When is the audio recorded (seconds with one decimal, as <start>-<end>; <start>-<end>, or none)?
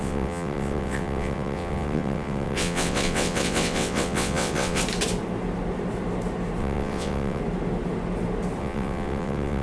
4.8-6.6; 7.4-8.6